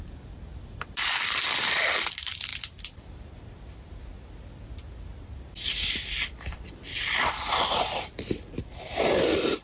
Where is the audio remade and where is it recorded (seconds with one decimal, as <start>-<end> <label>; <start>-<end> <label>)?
0.0-2.5 remade; 2.5-6.1 recorded; 6.1-9.6 remade